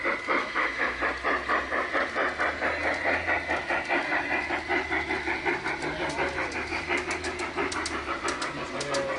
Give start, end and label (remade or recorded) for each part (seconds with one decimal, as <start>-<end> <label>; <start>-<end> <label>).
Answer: 0.0-0.4 recorded; 0.4-1.0 remade; 1.0-9.2 recorded